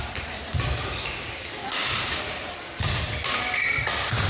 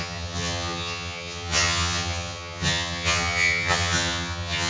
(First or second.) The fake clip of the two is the second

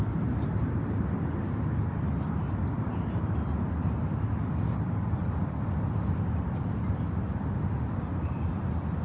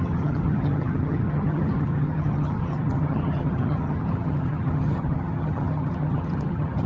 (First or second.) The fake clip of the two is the second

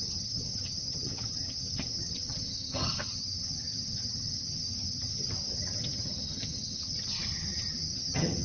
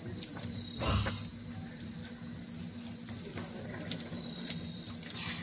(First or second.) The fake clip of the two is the first